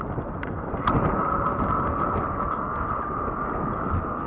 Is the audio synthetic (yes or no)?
no